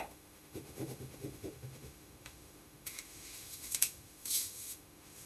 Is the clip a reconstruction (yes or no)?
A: yes